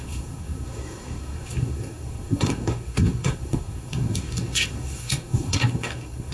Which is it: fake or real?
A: fake